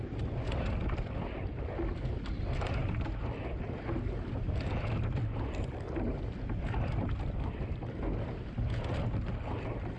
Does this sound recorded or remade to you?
recorded